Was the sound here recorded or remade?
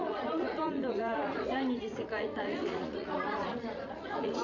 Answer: remade